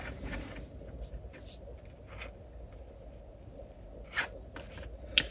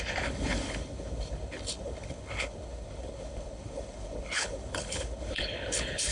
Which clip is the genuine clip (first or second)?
first